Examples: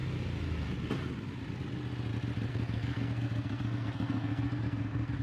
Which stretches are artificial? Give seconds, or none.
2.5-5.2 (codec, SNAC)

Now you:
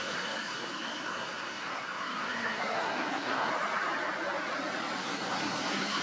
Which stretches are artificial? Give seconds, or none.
0.0-3.5 (codec, SNAC); 5.0-6.0

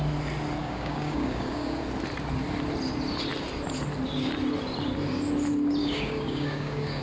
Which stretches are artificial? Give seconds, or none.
0.6-1.8 (codec, DAC); 5.8-7.0

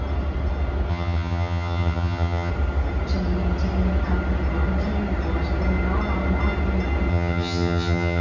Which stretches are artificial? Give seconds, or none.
0.9-2.5 (vocoder, HiFi-GAN); 7.1-8.2

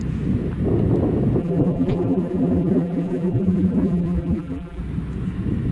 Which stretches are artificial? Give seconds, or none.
1.4-4.8 (vocoder, BigVGAN v2)

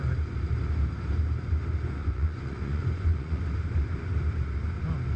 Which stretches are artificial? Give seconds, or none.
2.0-3.4 (vocoder, Vocos)

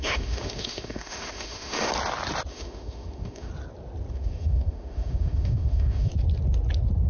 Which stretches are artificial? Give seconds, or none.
0.0-1.9 (autoencoder, DAC-VAE); 2.5-3.5; 4.1-6.1

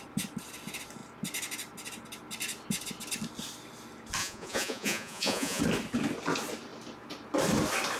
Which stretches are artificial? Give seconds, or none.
4.2-5.6 (vocoder, Vocos)